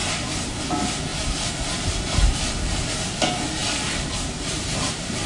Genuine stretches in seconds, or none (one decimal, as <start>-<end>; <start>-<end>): 0.0-1.1; 2.4-5.3